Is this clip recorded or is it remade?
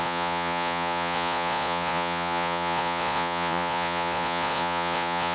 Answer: remade